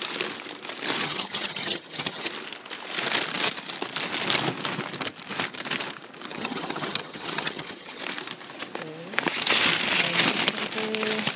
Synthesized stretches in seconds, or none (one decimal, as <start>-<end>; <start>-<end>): 1.0-2.3; 6.3-8.0